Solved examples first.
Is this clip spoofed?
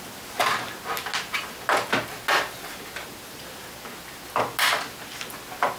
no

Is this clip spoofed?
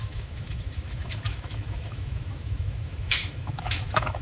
yes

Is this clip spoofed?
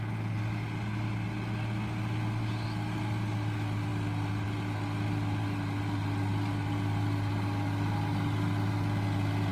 no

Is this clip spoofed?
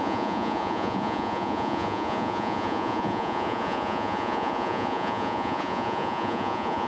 yes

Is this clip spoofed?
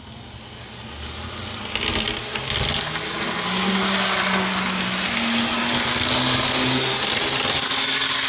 no